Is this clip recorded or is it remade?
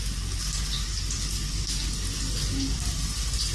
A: recorded